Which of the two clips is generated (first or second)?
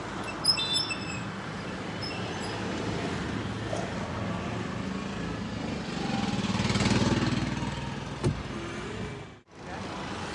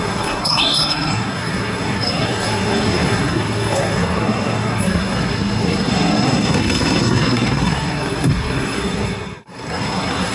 second